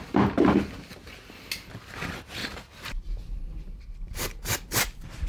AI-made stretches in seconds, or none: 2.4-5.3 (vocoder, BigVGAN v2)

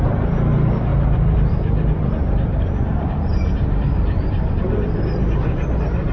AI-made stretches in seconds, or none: 0.9-4.6 (vocoder, BigVGAN v2)

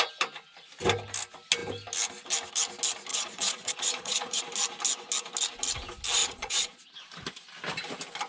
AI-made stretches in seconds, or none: 3.1-4.4 (vocoder, Vocos); 6.2-6.8

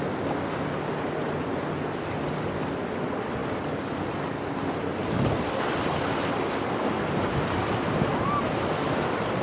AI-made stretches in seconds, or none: none

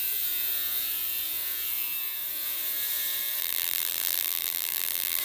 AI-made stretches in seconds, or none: 3.4-5.2 (vocoder, BigVGAN v2)

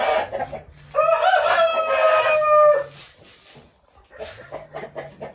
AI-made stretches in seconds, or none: none

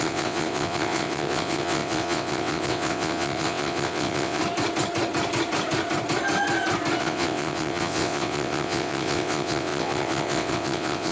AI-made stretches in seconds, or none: 0.0-4.4 (vocoder, WaveNeXt); 7.0-11.1

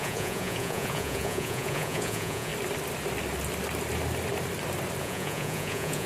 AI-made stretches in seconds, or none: 0.0-2.5 (vocoder, Vocos); 5.0-6.1